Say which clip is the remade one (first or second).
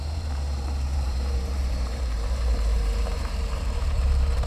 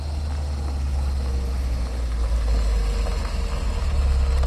first